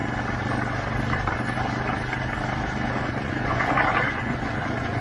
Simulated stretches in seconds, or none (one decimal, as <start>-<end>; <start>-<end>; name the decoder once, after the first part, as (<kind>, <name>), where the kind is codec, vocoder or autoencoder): 3.0-5.0 (vocoder, Vocos)